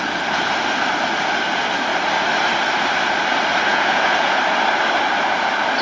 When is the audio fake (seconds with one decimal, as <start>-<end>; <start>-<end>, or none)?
3.7-4.4